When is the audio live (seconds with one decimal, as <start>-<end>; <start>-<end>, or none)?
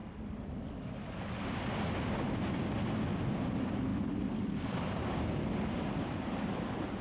0.0-7.0